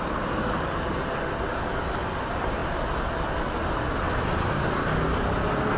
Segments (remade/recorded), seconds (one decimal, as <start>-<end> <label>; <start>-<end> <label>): 0.0-5.8 recorded